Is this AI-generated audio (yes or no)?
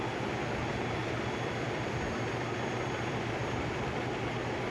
no